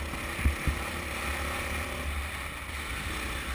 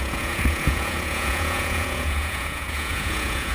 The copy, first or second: second